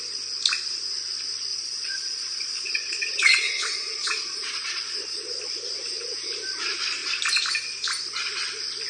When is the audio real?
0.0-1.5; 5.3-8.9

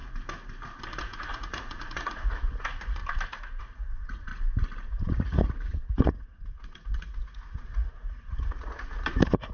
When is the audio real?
0.0-1.0; 3.0-3.6; 4.3-4.9

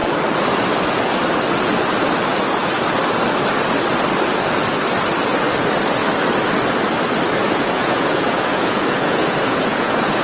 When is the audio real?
0.0-7.4